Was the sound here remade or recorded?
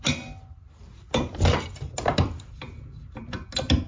recorded